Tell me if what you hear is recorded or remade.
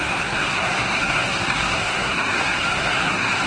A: remade